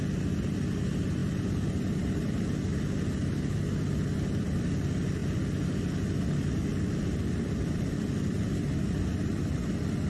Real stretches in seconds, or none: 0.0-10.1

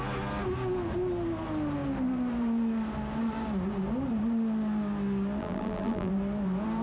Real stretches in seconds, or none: 0.0-5.4; 6.1-6.8

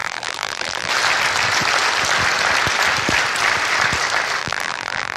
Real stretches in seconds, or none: 0.9-4.4

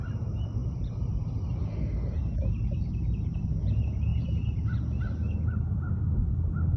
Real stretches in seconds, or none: 0.0-6.8